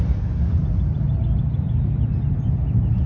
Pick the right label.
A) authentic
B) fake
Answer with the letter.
A